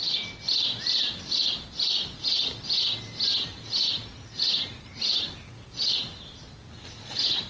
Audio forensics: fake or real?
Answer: real